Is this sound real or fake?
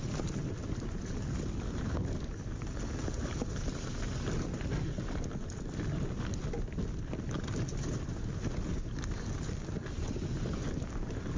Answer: real